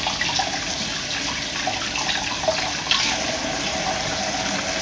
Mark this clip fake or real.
real